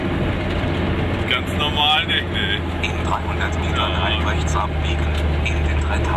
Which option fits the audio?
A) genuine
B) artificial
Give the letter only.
A